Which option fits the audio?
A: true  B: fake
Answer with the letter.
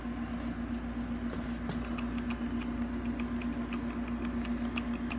A